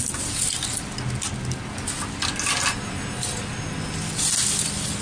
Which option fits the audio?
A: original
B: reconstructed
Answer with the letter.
A